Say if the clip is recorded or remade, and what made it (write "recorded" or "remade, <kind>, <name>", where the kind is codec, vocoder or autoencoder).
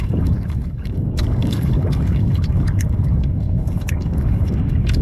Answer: remade, codec, DAC